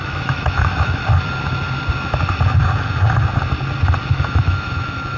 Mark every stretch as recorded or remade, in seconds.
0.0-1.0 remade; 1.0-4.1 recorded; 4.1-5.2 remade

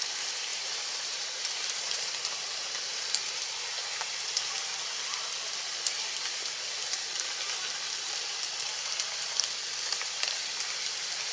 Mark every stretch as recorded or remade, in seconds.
0.0-0.5 recorded; 0.5-2.2 remade; 2.2-11.3 recorded

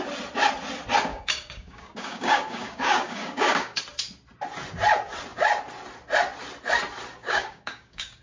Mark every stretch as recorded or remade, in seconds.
0.0-1.1 recorded; 1.1-3.8 remade; 3.8-7.2 recorded; 7.2-8.2 remade

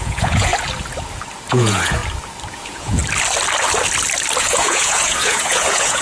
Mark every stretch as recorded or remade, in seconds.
0.0-0.5 remade; 0.5-1.5 recorded; 1.5-2.0 remade; 2.0-2.5 recorded; 2.5-3.0 remade; 3.0-4.4 recorded; 4.4-6.0 remade

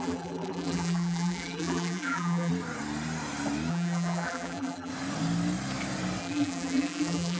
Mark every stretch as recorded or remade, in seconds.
0.0-2.5 remade; 2.5-3.7 recorded; 3.7-4.9 remade; 4.9-6.2 recorded; 6.2-7.4 remade